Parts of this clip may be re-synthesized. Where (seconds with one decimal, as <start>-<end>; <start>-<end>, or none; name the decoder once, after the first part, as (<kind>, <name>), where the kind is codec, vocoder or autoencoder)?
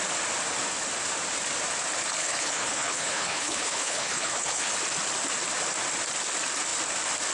2.2-4.7 (codec, HILCodec)